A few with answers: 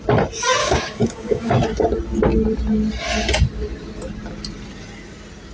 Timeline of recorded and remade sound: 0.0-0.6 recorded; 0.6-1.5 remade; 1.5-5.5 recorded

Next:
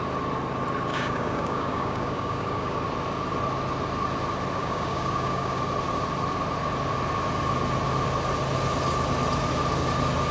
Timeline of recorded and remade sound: 0.0-0.9 recorded; 0.9-2.8 remade; 2.8-4.6 recorded; 4.6-5.6 remade; 5.6-10.3 recorded

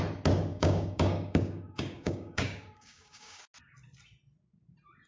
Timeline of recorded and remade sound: 0.0-0.5 recorded; 0.5-3.4 remade; 3.4-5.1 recorded